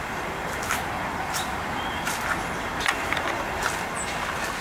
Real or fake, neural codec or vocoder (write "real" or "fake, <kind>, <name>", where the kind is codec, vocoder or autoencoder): real